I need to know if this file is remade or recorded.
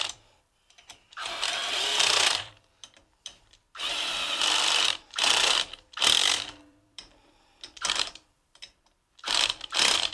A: remade